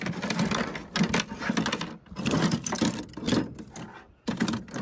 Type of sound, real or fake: real